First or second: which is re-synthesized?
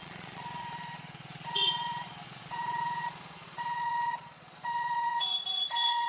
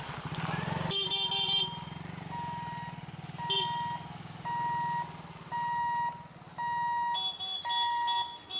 first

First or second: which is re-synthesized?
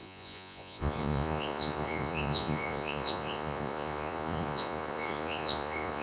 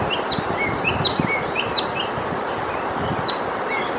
first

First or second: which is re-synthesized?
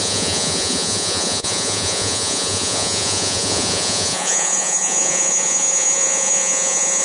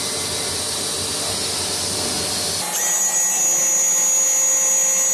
first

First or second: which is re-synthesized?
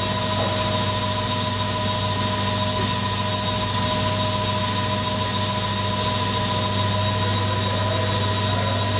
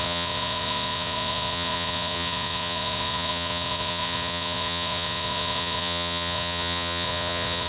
second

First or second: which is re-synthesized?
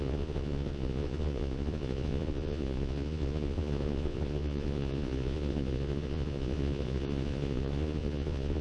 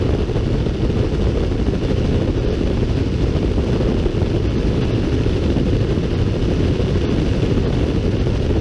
first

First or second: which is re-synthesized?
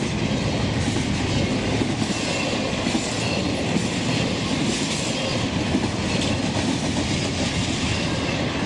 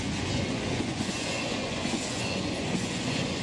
second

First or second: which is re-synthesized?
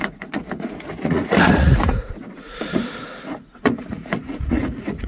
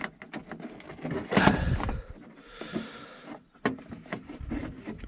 first